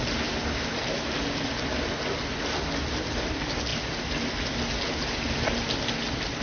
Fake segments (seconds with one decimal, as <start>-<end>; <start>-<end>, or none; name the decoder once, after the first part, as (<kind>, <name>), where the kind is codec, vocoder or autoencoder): none